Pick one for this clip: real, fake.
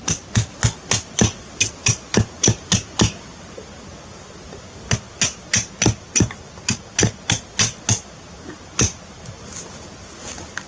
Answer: real